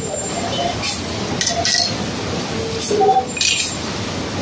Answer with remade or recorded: recorded